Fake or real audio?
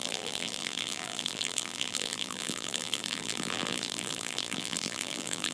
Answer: fake